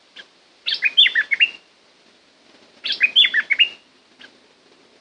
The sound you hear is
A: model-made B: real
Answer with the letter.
B